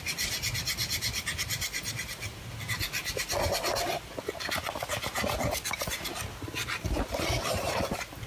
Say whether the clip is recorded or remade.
recorded